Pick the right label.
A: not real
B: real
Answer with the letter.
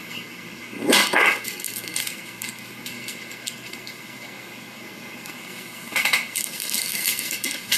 A